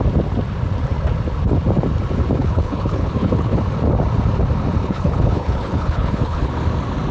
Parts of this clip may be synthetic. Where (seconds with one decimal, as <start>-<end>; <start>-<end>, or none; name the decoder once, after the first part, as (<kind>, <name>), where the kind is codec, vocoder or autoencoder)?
2.4-3.6 (codec, HILCodec); 4.8-6.5